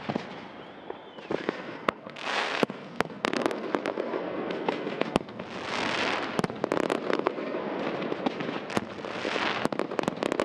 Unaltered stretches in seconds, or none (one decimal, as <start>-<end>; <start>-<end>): 0.0-1.4; 5.4-7.1; 7.8-10.4

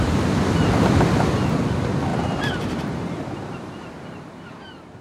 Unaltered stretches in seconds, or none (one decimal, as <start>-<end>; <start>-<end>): 0.0-2.1

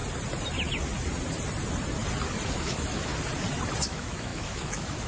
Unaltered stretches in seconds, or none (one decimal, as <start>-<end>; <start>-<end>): 0.0-2.5; 3.1-3.8

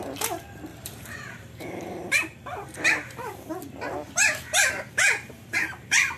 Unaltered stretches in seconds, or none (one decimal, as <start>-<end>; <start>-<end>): 0.0-0.7; 3.5-4.2

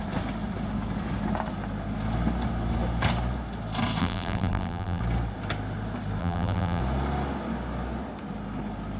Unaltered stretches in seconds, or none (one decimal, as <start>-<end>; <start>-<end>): 0.0-4.0; 5.0-6.2; 6.8-9.0